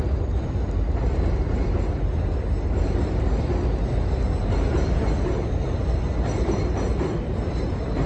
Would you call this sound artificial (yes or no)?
no